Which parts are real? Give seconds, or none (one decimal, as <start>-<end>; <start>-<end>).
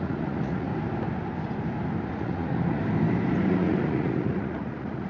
0.7-2.1; 2.8-3.5